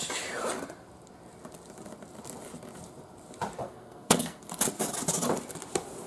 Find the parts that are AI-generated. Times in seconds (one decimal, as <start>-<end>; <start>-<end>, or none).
3.6-4.4